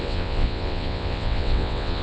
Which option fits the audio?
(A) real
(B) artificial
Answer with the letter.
B